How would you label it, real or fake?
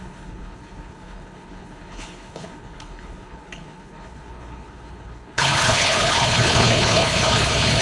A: fake